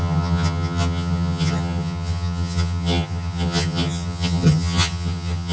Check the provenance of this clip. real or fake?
fake